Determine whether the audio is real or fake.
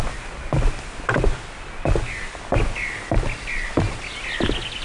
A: real